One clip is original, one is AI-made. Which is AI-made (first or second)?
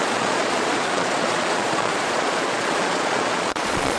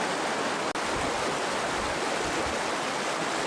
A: first